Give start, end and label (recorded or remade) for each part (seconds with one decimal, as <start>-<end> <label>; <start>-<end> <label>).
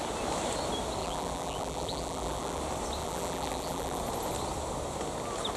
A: 0.0-1.0 recorded; 1.0-2.6 remade; 2.6-3.0 recorded; 3.0-4.0 remade; 4.0-5.6 recorded